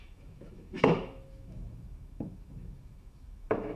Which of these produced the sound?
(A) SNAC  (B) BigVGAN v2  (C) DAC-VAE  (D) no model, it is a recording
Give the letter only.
C